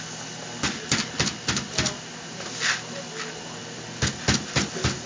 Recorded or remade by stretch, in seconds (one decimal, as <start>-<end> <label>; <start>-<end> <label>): 0.0-5.1 recorded